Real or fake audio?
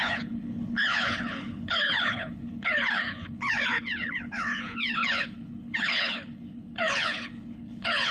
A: fake